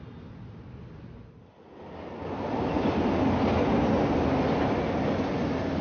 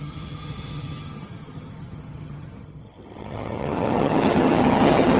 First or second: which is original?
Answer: first